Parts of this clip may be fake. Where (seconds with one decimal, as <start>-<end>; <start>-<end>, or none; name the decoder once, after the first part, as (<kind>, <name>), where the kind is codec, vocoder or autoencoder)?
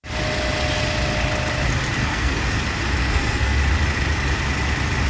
2.0-2.6 (codec, SNAC); 3.0-3.6